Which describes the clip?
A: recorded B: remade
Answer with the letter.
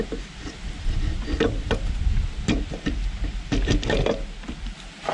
B